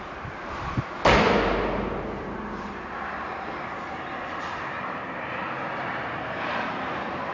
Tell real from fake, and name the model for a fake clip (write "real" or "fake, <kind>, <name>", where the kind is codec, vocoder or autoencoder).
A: fake, vocoder, BigVGAN v2